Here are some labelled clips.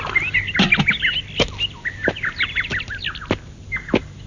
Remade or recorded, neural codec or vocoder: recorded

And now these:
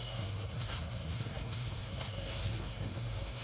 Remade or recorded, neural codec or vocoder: remade, codec, SNAC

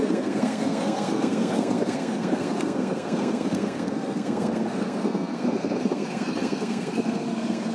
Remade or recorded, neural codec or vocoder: remade, codec, SNAC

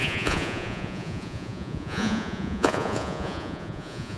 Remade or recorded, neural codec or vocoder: remade, vocoder, Vocos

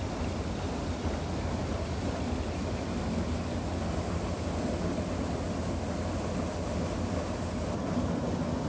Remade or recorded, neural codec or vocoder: recorded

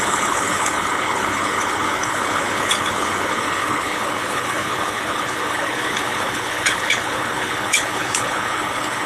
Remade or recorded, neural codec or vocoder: remade, codec, HILCodec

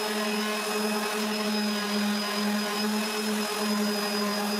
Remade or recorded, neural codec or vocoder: recorded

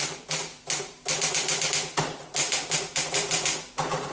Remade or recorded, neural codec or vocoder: recorded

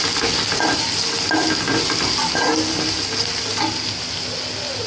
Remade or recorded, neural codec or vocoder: recorded